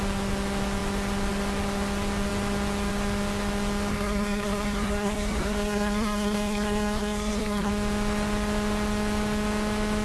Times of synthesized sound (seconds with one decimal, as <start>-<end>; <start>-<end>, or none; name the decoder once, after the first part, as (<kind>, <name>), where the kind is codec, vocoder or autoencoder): 3.9-7.7 (codec, SNAC)